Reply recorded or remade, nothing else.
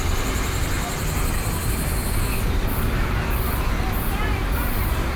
recorded